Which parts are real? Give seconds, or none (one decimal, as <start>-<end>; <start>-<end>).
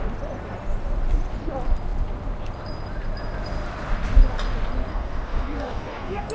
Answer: 0.0-4.9